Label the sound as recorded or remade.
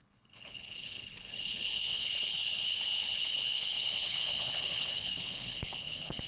remade